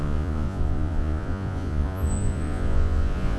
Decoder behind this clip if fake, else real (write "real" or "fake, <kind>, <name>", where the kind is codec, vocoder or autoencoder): fake, vocoder, Vocos